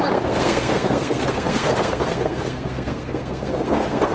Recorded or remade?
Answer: remade